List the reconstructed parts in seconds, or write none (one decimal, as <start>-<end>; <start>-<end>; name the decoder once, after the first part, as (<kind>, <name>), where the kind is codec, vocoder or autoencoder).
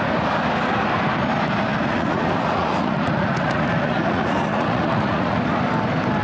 1.7-5.4 (vocoder, Vocos)